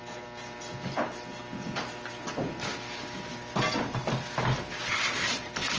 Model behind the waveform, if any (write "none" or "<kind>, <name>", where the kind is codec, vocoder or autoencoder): none